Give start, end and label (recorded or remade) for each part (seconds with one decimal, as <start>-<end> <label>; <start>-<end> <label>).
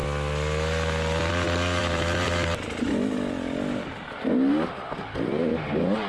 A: 0.0-1.8 recorded; 1.8-4.7 remade; 4.7-6.1 recorded